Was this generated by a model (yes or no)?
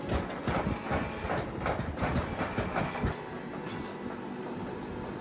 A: no